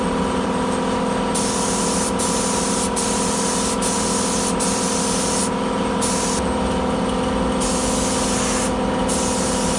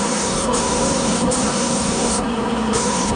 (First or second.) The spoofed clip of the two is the second